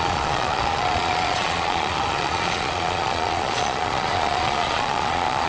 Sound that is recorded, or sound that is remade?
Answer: remade